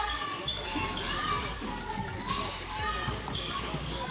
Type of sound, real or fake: fake